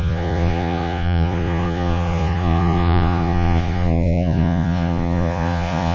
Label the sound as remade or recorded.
remade